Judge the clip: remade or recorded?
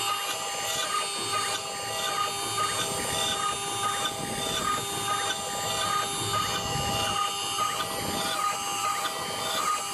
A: recorded